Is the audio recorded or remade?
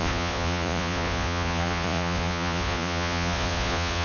remade